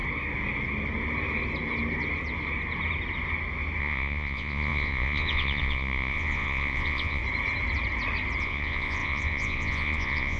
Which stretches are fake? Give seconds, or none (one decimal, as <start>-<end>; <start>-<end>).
3.8-7.2; 8.4-10.4